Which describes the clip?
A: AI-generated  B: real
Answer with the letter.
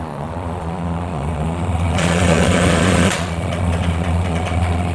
A